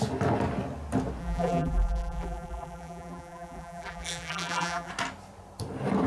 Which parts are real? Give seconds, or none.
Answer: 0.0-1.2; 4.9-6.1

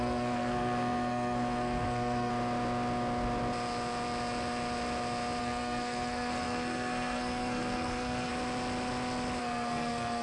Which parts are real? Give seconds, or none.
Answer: 2.3-5.4; 8.3-9.4

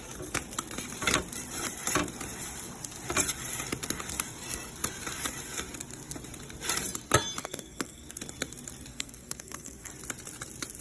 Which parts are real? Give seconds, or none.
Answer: 0.0-7.4; 8.2-8.9; 9.9-10.8

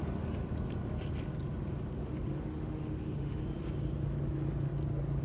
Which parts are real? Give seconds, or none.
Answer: 0.0-2.0; 3.4-5.2

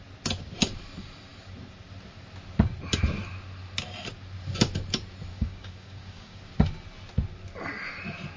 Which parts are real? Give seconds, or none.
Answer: 0.0-5.3; 6.4-8.4

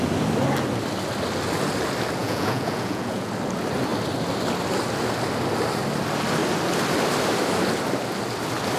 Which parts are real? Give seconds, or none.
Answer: 0.0-2.2; 3.3-8.8

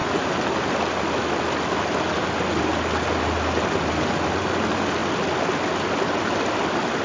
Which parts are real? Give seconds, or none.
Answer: 0.0-7.0

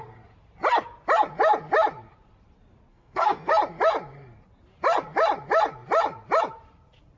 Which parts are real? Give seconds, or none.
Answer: 0.0-2.9; 3.5-7.2